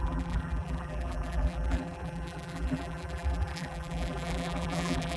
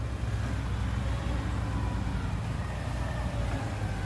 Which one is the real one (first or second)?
second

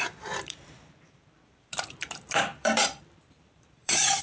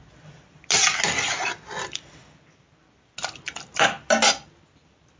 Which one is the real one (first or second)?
second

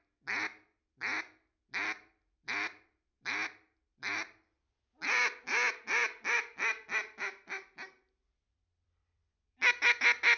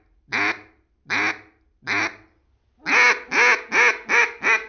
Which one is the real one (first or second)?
second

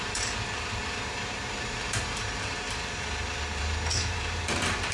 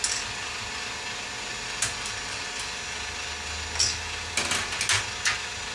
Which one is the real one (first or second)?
second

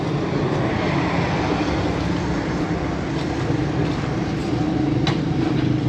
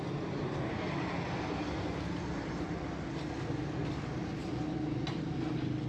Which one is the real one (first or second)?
second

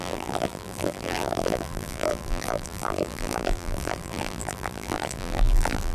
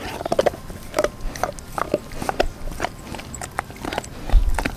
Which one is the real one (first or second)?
second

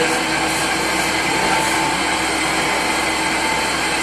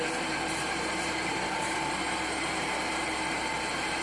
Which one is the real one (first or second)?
first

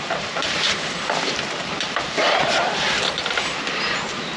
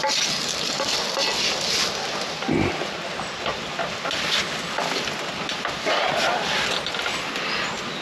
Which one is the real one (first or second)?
second